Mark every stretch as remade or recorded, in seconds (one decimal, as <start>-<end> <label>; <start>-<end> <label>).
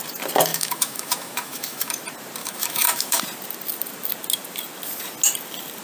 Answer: 0.0-0.5 recorded; 0.5-1.9 remade; 1.9-2.4 recorded; 2.4-3.2 remade; 3.2-5.8 recorded